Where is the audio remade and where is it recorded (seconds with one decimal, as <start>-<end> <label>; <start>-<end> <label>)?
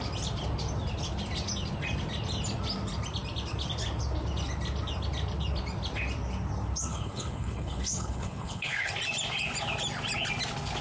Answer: 0.0-6.9 recorded; 6.9-8.9 remade; 8.9-10.8 recorded